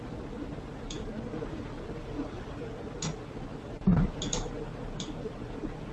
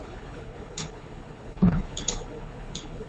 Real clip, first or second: first